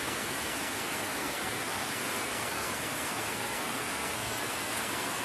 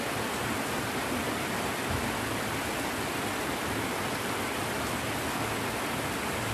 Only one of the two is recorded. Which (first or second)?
second